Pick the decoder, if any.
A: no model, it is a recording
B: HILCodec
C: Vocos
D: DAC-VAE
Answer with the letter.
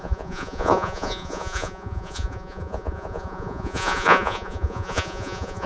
C